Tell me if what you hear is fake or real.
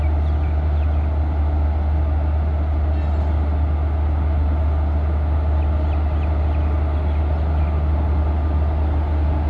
real